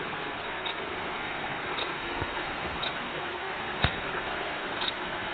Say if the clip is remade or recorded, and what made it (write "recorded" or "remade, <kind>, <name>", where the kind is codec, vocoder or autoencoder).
remade, codec, SNAC